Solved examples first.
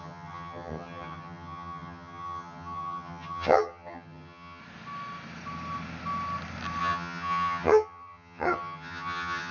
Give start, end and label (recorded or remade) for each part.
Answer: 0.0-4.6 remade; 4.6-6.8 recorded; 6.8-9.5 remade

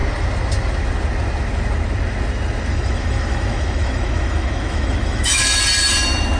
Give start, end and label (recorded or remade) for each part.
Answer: 0.0-2.7 recorded; 2.7-5.6 remade; 5.6-6.4 recorded

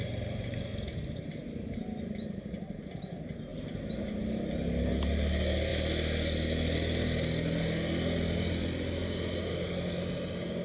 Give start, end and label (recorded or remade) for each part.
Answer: 0.0-10.6 recorded

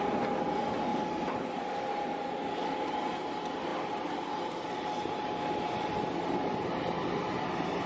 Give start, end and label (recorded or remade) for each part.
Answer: 0.0-0.9 recorded; 0.9-2.4 remade; 2.4-7.9 recorded